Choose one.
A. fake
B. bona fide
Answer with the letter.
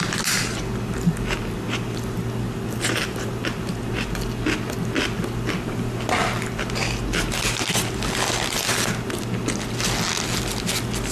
B